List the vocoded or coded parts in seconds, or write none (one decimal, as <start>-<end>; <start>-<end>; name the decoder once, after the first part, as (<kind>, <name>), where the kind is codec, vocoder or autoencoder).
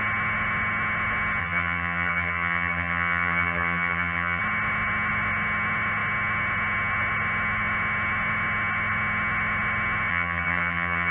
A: 1.4-4.4 (vocoder, HiFi-GAN); 10.1-11.1